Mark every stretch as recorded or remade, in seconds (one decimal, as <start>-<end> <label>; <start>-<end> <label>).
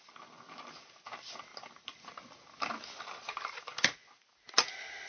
0.0-5.1 recorded